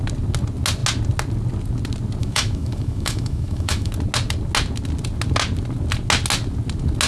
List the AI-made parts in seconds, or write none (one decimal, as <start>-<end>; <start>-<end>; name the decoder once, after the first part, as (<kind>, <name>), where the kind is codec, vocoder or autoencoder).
2.2-3.9 (autoencoder, DAC-VAE)